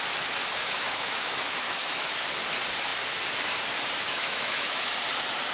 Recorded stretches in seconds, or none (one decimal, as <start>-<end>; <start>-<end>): 0.0-0.6; 2.2-4.1; 4.9-5.5